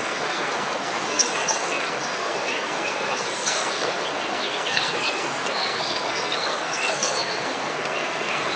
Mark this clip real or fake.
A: fake